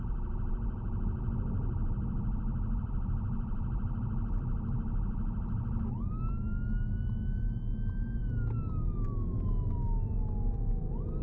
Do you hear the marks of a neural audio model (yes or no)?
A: no